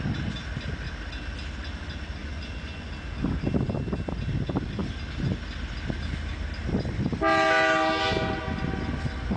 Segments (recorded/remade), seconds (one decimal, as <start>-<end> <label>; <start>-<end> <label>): 0.0-2.2 recorded; 2.2-2.9 remade; 2.9-9.4 recorded